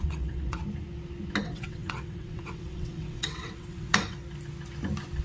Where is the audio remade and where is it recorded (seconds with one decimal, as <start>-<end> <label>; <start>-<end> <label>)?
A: 0.0-0.6 remade; 0.6-1.4 recorded; 1.4-4.2 remade; 4.2-5.2 recorded